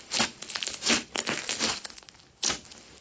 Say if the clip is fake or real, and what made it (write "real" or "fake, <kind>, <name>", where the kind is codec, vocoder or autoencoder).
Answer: real